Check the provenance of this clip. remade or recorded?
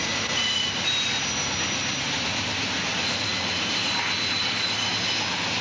recorded